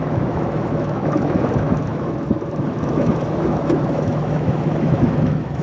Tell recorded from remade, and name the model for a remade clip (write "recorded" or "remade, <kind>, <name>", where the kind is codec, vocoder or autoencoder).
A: remade, autoencoder, DAC-VAE